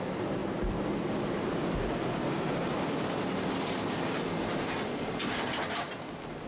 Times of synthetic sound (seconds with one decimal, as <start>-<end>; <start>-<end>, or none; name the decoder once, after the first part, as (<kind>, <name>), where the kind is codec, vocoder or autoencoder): none